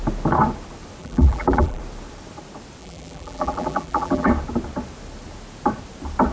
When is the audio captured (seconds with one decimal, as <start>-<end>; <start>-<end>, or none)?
0.0-1.0; 1.8-2.8; 4.3-6.3